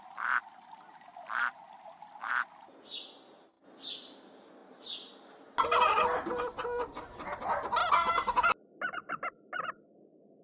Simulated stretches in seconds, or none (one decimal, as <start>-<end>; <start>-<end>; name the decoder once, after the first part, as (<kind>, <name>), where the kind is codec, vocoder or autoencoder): none